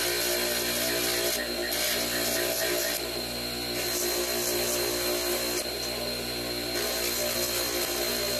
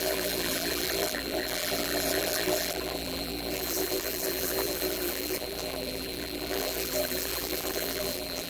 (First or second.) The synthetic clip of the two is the second